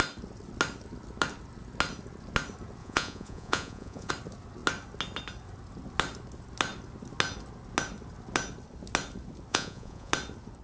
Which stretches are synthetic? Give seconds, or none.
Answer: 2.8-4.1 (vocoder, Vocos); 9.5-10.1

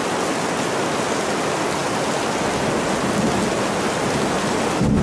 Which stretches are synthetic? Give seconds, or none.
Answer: none

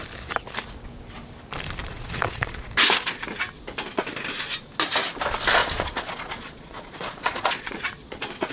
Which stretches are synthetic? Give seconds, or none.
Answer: 1.9-2.7 (vocoder, Vocos); 5.6-8.5

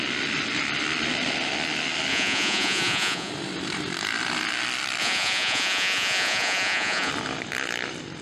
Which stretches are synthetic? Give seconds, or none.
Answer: 2.1-3.3 (vocoder, Vocos); 5.0-7.1

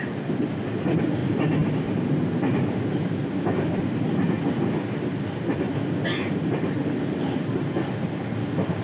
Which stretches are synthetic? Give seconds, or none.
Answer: none

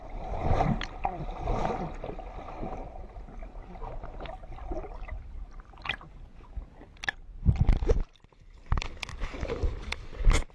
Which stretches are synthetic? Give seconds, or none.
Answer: none

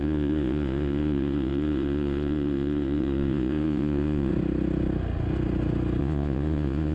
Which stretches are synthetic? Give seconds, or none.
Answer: 0.0-4.3 (vocoder, Vocos); 6.0-6.9